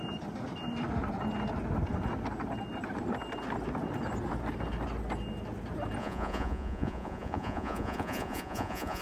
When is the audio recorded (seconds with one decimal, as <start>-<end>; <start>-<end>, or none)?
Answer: 0.0-6.0